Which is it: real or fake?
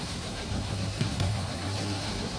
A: fake